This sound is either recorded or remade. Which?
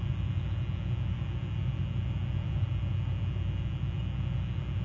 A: recorded